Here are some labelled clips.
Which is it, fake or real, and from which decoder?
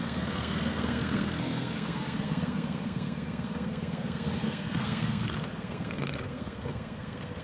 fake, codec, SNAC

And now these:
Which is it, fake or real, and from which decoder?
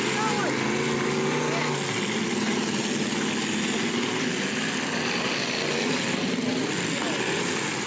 real